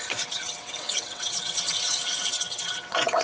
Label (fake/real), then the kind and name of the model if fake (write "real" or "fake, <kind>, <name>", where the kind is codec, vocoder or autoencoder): fake, vocoder, WaveNeXt